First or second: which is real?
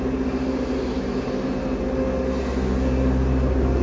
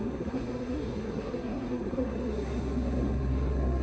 first